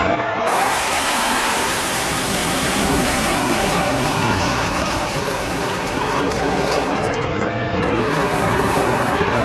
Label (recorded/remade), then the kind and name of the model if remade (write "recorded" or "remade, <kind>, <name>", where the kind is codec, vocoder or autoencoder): remade, codec, SNAC